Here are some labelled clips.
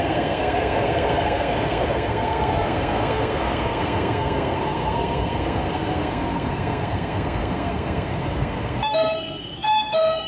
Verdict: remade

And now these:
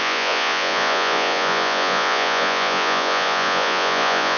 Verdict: remade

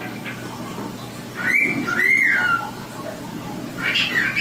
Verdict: recorded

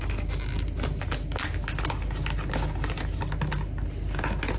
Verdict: recorded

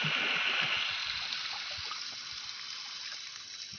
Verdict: recorded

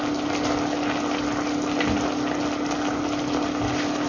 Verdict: recorded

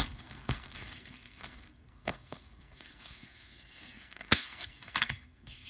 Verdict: remade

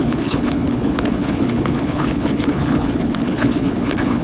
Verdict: remade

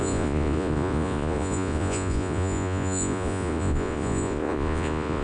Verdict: remade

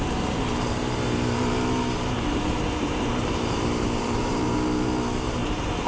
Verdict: remade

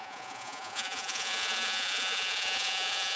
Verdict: remade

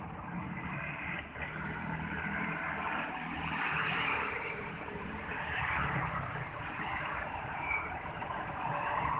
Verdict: remade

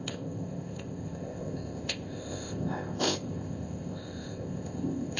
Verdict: remade